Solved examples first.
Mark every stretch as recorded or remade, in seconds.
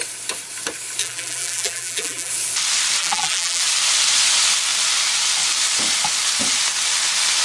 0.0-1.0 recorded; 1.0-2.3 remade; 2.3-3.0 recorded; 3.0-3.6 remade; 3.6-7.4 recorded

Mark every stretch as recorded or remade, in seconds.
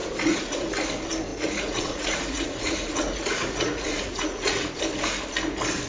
0.0-0.7 remade; 0.7-1.3 recorded; 1.3-4.8 remade; 4.8-5.9 recorded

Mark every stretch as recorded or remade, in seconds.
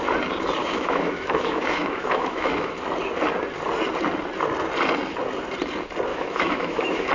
0.0-0.6 recorded; 0.6-2.7 remade; 2.7-6.1 recorded; 6.1-7.1 remade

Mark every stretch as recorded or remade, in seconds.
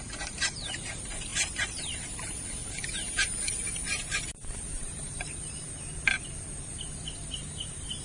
0.0-8.0 remade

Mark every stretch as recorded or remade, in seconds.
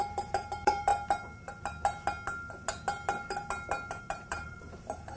0.0-0.9 remade; 0.9-4.0 recorded; 4.0-5.2 remade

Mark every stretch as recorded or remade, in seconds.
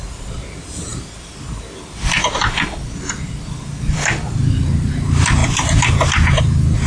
0.0-6.9 remade